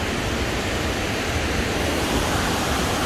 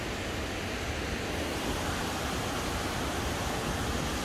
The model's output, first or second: first